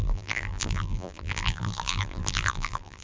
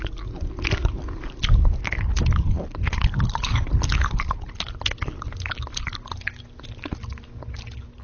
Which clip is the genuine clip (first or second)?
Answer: second